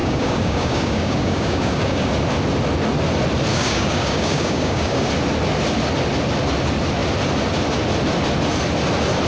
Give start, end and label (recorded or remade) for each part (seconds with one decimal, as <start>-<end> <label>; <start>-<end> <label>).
0.0-2.1 remade; 2.1-3.5 recorded; 3.5-5.1 remade; 5.1-9.3 recorded